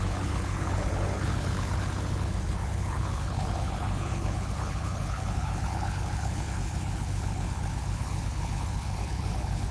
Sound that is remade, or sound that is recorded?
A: remade